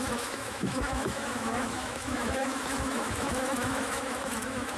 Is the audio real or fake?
fake